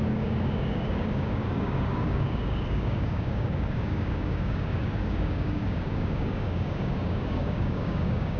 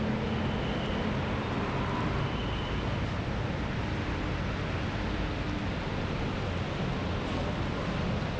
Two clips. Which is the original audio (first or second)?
second